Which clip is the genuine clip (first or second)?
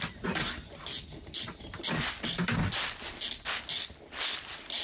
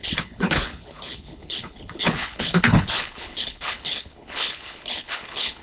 first